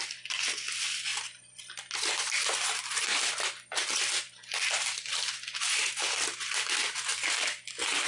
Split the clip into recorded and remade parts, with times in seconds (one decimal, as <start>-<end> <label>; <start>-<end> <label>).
0.0-8.1 recorded